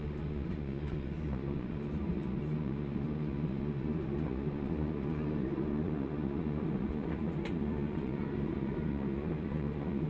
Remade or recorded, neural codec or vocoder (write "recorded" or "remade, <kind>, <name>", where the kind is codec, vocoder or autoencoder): remade, vocoder, Vocos